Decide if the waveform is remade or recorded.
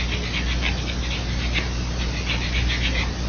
recorded